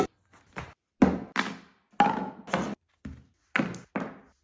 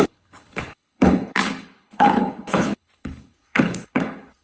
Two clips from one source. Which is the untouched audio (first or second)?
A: first